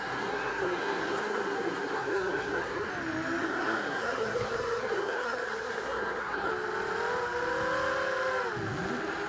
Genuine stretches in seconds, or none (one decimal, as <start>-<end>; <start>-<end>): 2.9-3.4; 6.5-9.3